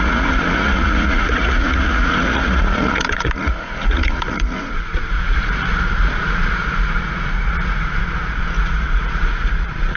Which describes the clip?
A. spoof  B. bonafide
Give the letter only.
A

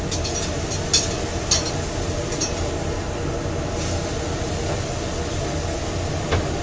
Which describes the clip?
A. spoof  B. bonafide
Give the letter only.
B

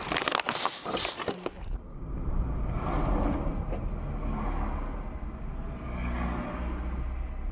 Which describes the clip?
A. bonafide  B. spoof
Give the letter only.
A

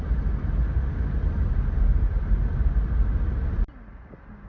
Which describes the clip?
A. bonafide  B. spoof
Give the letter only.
A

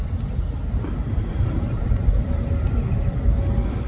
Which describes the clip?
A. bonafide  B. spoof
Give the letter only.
A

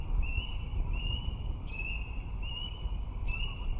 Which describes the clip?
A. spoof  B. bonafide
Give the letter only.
B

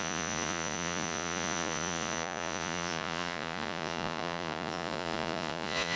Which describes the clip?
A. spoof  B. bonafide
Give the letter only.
A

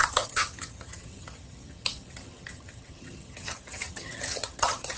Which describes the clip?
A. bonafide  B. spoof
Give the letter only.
B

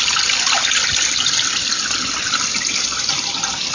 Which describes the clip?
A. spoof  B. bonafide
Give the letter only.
B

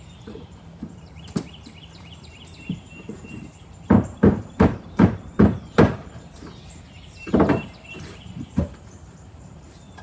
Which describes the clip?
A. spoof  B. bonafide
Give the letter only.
A